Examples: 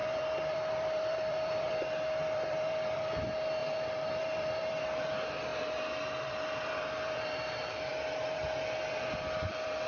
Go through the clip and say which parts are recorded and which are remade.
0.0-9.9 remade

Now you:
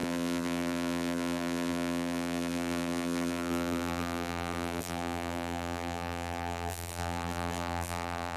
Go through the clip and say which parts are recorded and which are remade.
0.0-8.4 remade

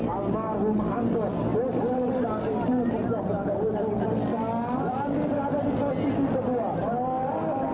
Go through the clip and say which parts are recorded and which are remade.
0.0-1.5 recorded; 1.5-3.8 remade; 3.8-7.7 recorded

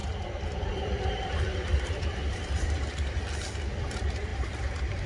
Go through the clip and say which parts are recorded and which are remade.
0.0-3.1 remade; 3.1-4.3 recorded; 4.3-5.1 remade

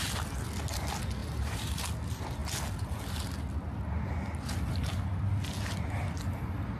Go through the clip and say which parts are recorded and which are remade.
0.0-1.2 recorded; 1.2-1.8 remade; 1.8-6.8 recorded

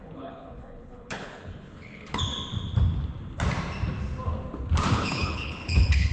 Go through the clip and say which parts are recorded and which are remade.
0.0-2.3 remade; 2.3-4.9 recorded; 4.9-6.1 remade

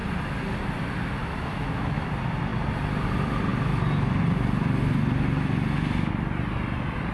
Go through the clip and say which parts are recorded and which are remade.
0.0-1.2 recorded; 1.2-2.1 remade; 2.1-7.1 recorded